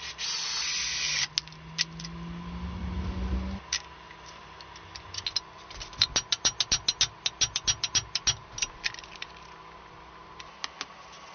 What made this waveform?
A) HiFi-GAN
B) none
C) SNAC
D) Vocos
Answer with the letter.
B